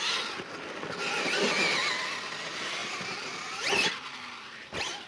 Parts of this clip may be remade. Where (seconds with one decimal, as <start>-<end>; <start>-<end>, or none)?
none